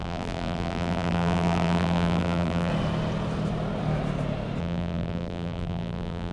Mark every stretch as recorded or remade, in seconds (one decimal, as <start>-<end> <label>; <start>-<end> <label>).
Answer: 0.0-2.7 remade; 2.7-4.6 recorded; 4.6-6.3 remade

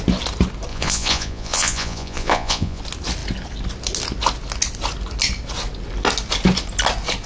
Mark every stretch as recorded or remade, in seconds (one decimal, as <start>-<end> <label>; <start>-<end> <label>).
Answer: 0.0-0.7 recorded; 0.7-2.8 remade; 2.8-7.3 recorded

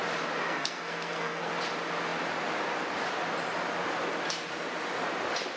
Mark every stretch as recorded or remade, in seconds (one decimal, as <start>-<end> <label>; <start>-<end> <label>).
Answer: 0.0-0.4 recorded; 0.4-1.5 remade; 1.5-5.6 recorded

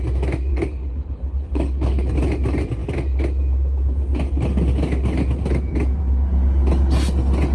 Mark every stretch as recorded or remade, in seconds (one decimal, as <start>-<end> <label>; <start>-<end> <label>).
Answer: 0.0-0.5 recorded; 0.5-2.1 remade; 2.1-7.5 recorded